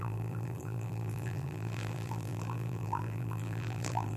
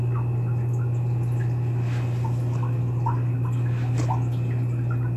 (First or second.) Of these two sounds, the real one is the second